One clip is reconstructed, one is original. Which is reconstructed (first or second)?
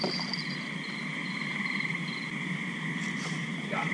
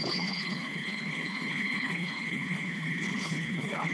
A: second